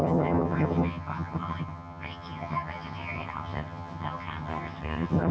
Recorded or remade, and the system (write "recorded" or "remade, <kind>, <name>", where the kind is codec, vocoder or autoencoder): remade, vocoder, HiFi-GAN